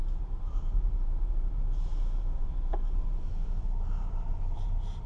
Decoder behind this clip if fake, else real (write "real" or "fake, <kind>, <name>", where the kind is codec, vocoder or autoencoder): fake, vocoder, BigVGAN v2